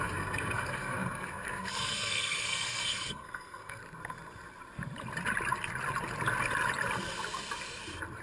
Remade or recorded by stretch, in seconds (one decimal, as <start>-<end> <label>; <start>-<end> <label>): 0.0-3.8 remade; 3.8-8.2 recorded

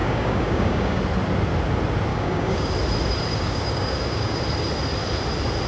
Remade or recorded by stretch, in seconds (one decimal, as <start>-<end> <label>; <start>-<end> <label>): 0.0-1.0 remade; 1.0-2.1 recorded; 2.1-2.7 remade; 2.7-3.3 recorded; 3.3-4.4 remade; 4.4-5.7 recorded

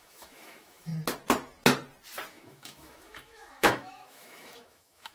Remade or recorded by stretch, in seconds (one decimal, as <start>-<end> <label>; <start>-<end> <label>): 0.0-0.9 remade; 0.9-2.3 recorded; 2.3-5.1 remade

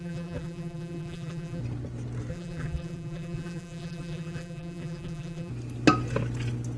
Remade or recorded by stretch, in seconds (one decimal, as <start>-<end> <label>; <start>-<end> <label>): 0.0-1.6 remade; 1.6-2.3 recorded; 2.3-5.5 remade; 5.5-6.8 recorded

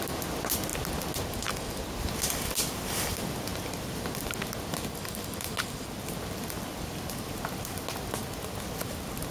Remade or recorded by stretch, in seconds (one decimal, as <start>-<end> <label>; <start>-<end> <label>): 0.0-9.3 recorded

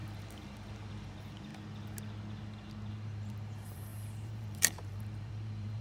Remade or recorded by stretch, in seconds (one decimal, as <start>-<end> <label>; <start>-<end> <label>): 0.0-1.5 remade; 1.5-2.9 recorded; 2.9-5.8 remade

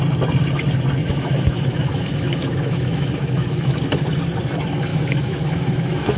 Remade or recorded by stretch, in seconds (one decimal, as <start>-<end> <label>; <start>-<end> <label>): 0.0-1.0 recorded; 1.0-3.7 remade; 3.7-4.9 recorded; 4.9-6.2 remade